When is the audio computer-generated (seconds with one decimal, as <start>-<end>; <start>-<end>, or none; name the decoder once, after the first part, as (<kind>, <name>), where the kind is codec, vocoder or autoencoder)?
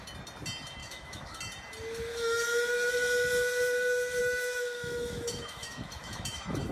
0.8-1.4 (autoencoder, DAC-VAE); 2.1-2.9; 4.2-6.7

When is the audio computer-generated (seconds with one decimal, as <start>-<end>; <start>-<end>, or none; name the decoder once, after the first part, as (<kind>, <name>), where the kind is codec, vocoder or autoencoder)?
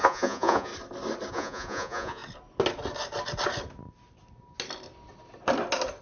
0.0-0.7 (vocoder, Vocos); 1.3-2.2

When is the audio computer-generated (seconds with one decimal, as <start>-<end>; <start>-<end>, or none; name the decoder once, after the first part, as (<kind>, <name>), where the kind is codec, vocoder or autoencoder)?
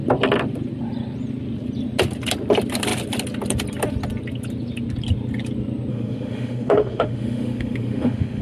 5.9-8.4 (autoencoder, DAC-VAE)